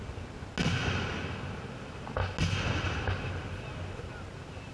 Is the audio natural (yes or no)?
yes